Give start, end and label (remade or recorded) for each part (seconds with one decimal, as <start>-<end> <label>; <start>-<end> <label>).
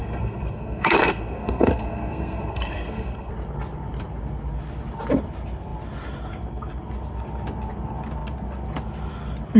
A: 0.0-3.3 remade; 3.3-9.6 recorded